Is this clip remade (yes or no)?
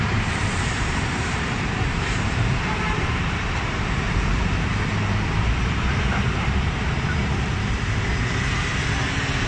yes